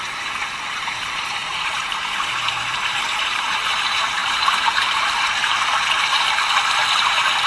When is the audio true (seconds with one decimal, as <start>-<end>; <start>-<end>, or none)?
5.5-7.0